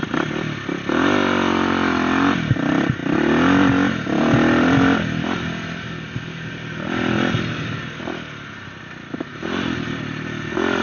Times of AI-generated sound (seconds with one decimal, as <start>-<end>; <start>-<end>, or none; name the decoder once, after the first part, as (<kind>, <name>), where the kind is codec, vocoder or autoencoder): none